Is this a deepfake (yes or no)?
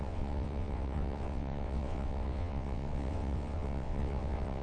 yes